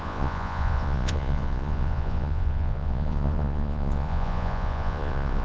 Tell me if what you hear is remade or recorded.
remade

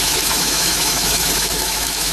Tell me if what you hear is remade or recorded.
remade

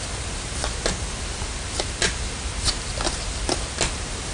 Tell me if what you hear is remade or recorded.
recorded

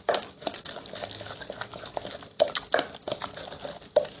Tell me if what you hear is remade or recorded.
recorded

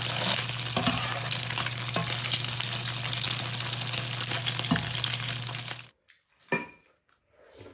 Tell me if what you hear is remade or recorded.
recorded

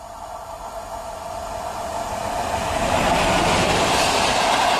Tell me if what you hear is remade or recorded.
recorded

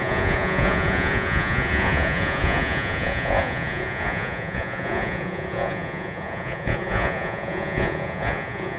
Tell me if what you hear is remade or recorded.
remade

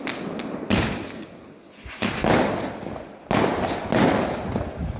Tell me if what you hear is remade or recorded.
recorded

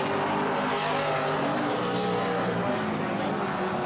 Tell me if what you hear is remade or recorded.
recorded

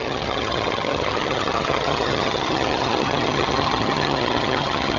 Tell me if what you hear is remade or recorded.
remade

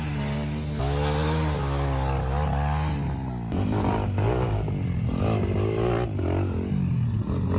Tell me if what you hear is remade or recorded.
recorded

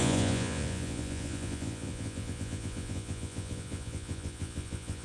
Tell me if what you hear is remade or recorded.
remade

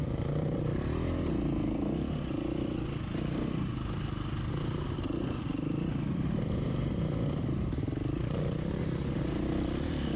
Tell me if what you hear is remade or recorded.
recorded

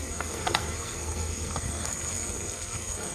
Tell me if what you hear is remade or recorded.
remade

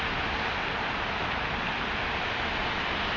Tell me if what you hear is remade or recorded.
recorded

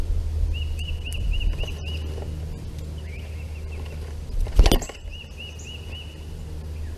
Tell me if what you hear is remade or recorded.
recorded